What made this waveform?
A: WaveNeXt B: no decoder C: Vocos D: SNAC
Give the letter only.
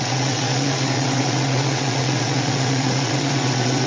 A